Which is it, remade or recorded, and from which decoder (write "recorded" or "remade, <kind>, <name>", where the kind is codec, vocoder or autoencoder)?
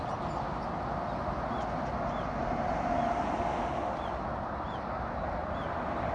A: recorded